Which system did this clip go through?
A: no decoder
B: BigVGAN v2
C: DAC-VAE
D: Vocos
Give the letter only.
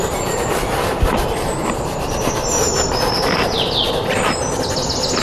B